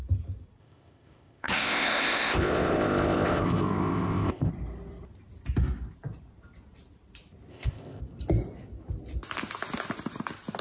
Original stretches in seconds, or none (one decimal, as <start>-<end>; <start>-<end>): 0.0-0.6; 4.5-7.5; 8.0-10.6